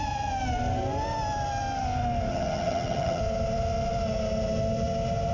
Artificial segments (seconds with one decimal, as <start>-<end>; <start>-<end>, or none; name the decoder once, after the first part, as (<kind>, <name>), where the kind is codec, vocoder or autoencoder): 2.3-3.2 (vocoder, HiFi-GAN)